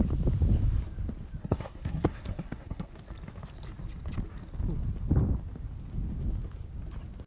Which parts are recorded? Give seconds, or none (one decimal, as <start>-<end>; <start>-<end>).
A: 0.0-1.4; 2.9-7.3